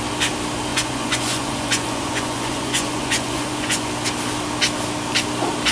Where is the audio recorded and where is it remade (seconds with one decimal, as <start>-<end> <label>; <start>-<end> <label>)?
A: 0.0-0.7 recorded; 0.7-3.9 remade; 3.9-5.7 recorded